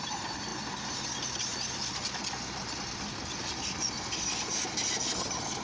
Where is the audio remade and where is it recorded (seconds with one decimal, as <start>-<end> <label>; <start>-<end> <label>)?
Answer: 0.0-5.6 recorded